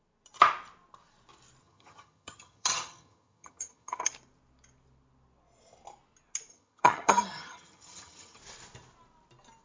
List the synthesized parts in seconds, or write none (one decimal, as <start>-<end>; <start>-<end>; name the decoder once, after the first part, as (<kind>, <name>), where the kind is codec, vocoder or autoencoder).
1.6-4.0 (vocoder, HiFi-GAN); 6.5-8.4